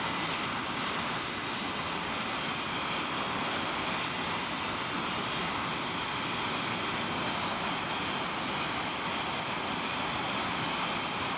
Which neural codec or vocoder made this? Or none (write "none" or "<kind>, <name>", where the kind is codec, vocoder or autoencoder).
none